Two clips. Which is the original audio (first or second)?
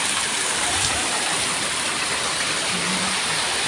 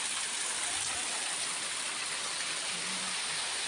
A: second